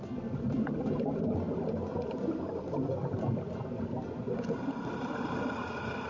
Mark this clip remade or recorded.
recorded